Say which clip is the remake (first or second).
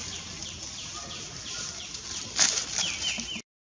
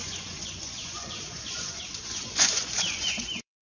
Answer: second